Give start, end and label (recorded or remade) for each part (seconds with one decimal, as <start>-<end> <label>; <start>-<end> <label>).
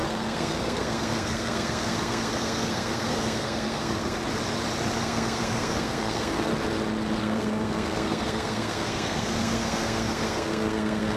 0.0-4.2 remade; 4.2-5.0 recorded; 5.0-6.5 remade; 6.5-7.2 recorded; 7.2-11.2 remade